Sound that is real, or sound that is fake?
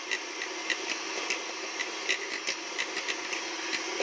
real